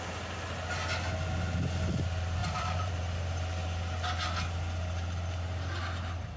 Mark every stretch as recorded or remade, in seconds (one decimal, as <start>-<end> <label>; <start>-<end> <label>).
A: 0.0-2.4 recorded; 2.4-2.9 remade; 2.9-6.4 recorded